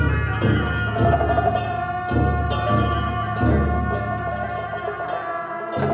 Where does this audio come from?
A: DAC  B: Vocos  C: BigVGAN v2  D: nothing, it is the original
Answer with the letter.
D